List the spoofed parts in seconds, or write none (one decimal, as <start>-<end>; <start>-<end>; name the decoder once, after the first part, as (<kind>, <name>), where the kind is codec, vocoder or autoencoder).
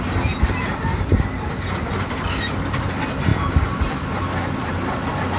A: none